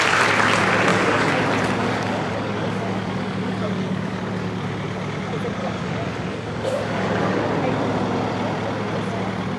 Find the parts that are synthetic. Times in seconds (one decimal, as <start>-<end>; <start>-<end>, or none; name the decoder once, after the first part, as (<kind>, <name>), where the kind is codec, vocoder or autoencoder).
0.9-1.4 (codec, DAC); 1.8-4.3; 5.6-7.4